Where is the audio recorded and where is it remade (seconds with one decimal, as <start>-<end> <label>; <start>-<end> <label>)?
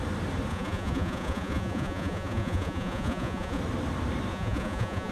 0.0-0.5 recorded; 0.5-3.6 remade; 3.6-4.3 recorded; 4.3-5.1 remade